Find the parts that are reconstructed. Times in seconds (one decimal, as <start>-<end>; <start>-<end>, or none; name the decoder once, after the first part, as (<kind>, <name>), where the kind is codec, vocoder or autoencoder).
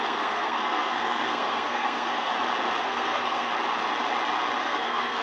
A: 0.0-2.3 (codec, SNAC); 2.8-3.5; 4.6-5.2